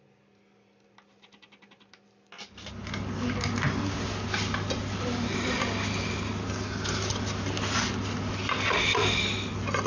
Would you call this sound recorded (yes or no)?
yes